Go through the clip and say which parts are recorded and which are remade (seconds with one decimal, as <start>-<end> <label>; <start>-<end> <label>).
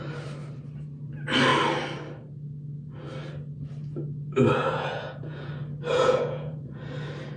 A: 0.0-4.6 recorded; 4.6-5.5 remade; 5.5-5.9 recorded; 5.9-6.8 remade; 6.8-7.4 recorded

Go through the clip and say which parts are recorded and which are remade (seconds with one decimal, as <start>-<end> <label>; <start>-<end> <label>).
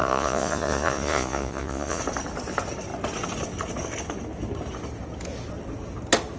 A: 0.0-2.0 remade; 2.0-6.4 recorded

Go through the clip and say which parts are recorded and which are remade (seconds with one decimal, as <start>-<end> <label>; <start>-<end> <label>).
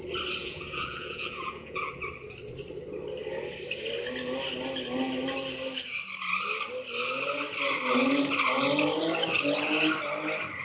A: 0.0-0.4 recorded; 0.4-1.9 remade; 1.9-10.6 recorded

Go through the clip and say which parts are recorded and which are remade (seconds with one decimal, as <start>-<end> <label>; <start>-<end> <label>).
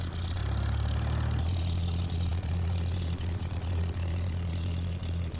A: 0.0-0.4 remade; 0.4-1.4 recorded; 1.4-5.4 remade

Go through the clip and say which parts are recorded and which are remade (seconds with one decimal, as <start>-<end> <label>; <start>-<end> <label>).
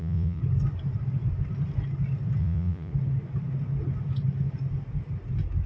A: 0.0-0.4 remade; 0.4-2.4 recorded; 2.4-2.9 remade; 2.9-5.7 recorded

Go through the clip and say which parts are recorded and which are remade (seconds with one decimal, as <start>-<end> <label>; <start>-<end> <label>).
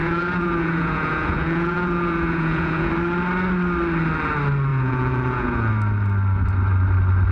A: 0.0-2.9 remade; 2.9-4.7 recorded; 4.7-5.7 remade; 5.7-7.3 recorded